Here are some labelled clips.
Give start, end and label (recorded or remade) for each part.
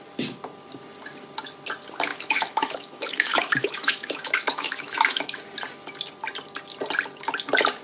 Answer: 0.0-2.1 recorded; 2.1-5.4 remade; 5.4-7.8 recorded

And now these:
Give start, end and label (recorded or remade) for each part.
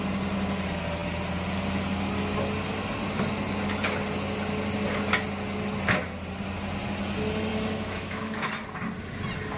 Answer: 0.0-7.5 recorded; 7.5-8.5 remade; 8.5-9.6 recorded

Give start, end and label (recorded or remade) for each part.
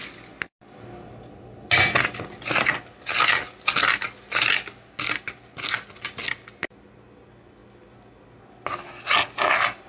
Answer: 0.0-9.9 recorded